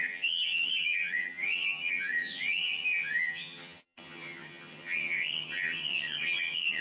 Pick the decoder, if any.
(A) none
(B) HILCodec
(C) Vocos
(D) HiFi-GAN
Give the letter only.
D